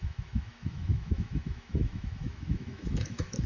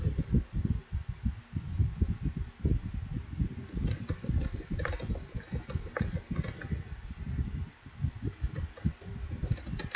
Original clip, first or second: second